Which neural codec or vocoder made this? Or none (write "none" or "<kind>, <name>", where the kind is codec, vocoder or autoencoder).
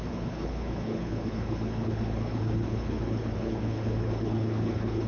codec, HILCodec